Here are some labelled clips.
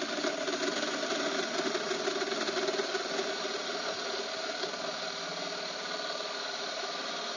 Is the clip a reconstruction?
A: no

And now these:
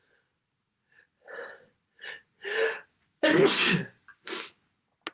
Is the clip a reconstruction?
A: no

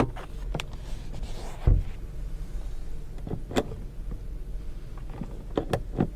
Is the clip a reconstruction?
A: no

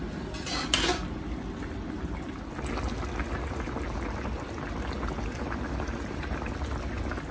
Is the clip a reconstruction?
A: no